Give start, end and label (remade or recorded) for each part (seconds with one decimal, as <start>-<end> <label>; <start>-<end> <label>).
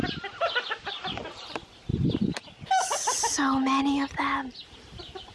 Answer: 0.0-5.3 recorded